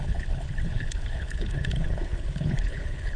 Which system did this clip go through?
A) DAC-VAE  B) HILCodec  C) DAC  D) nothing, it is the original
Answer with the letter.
B